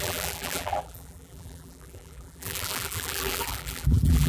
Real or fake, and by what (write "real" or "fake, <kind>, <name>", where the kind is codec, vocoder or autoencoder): fake, vocoder, BigVGAN v2